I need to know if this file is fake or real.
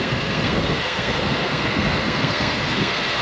fake